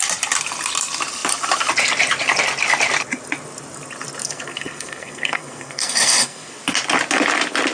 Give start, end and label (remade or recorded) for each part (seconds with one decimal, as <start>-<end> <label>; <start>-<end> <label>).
0.0-4.2 recorded; 4.2-6.6 remade; 6.6-7.7 recorded